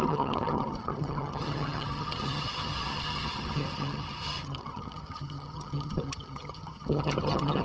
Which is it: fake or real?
fake